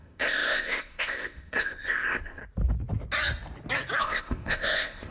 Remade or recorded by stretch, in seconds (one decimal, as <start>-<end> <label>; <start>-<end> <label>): 0.0-2.4 remade; 2.4-4.0 recorded; 4.0-5.1 remade